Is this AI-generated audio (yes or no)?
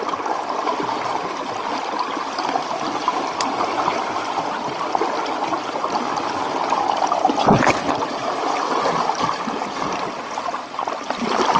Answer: no